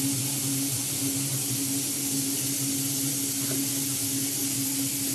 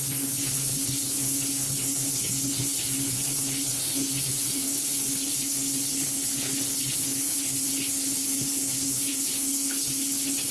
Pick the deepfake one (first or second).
second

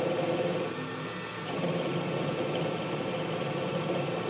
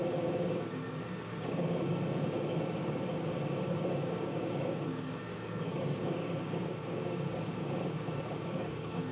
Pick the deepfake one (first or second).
second